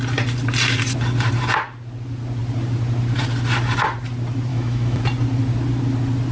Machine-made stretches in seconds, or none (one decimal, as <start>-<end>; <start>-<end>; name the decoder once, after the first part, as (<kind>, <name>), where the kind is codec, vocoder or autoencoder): 4.5-5.0 (autoencoder, DAC-VAE)